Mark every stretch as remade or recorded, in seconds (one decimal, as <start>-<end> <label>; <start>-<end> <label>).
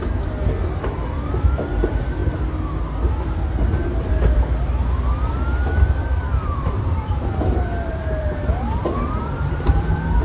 0.0-1.3 recorded; 1.3-2.2 remade; 2.2-3.1 recorded; 3.1-10.2 remade